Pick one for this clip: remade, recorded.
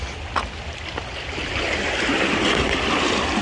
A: recorded